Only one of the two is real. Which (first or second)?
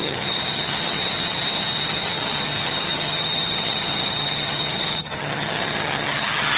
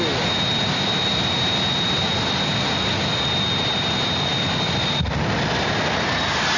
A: second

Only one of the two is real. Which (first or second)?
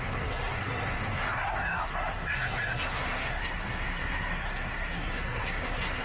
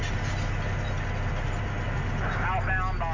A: second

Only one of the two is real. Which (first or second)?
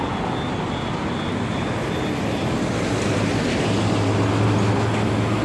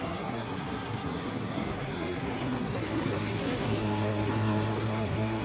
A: first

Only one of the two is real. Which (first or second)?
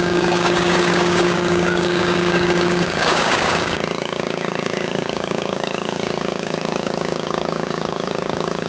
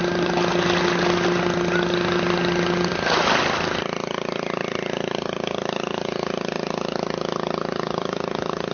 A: second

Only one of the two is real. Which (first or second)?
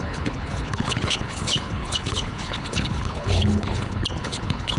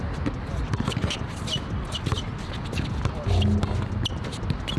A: second